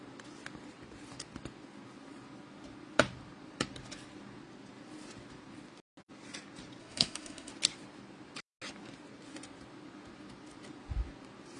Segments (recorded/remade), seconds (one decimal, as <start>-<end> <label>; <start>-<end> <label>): 0.0-6.8 recorded; 6.8-7.5 remade; 7.5-11.6 recorded